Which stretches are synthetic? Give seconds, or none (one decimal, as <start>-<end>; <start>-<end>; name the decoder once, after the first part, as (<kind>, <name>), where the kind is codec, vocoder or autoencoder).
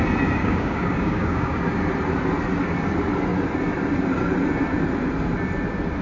0.4-1.6 (codec, DAC)